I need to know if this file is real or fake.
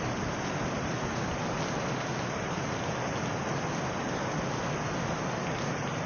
real